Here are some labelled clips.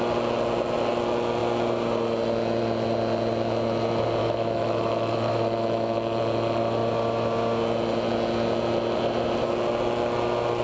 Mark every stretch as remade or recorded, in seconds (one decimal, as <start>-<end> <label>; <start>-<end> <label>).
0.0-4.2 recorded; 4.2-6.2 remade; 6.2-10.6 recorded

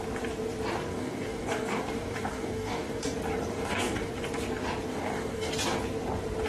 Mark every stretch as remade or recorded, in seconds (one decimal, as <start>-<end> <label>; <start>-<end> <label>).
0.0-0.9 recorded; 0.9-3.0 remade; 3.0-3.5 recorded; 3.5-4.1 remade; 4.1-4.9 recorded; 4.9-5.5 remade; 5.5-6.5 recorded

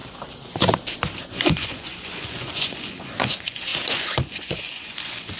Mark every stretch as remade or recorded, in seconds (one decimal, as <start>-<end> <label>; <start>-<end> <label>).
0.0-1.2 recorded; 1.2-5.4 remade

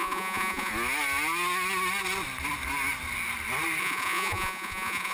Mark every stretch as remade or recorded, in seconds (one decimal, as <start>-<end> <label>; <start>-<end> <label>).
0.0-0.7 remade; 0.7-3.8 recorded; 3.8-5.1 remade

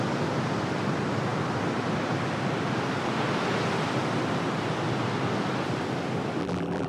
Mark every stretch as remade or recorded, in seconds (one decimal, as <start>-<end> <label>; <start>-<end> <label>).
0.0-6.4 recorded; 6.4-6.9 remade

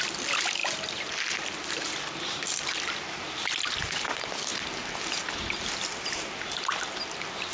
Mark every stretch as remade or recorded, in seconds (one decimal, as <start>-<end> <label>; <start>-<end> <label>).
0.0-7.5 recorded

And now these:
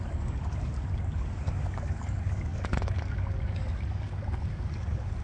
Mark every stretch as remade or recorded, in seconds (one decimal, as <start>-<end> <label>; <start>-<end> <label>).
0.0-5.2 remade